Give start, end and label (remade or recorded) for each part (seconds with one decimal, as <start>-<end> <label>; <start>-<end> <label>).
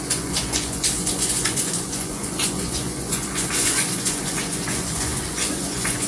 0.0-6.1 remade